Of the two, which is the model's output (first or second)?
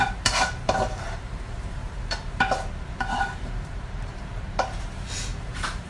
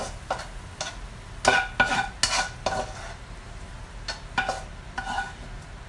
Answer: first